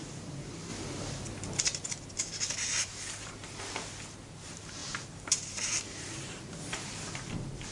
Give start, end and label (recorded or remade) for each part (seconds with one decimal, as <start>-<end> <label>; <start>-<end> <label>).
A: 0.0-0.7 remade; 0.7-1.6 recorded; 1.6-3.4 remade; 3.4-4.2 recorded; 4.2-7.7 remade